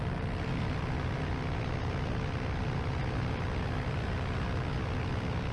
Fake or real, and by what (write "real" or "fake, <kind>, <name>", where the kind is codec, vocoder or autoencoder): real